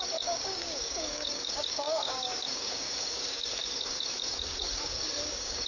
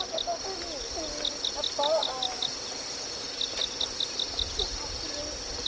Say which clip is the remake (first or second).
first